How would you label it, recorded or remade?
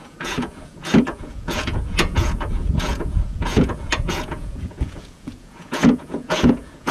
remade